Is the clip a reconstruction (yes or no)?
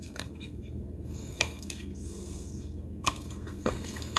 yes